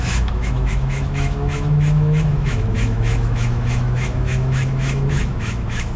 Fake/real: fake